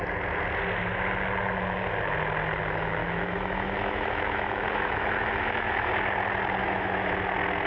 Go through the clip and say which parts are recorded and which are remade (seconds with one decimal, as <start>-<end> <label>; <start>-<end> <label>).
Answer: 0.0-3.0 recorded; 3.0-5.9 remade; 5.9-6.6 recorded; 6.6-7.1 remade; 7.1-7.7 recorded